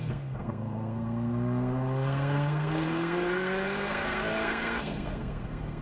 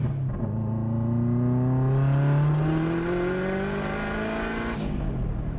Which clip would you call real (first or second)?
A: second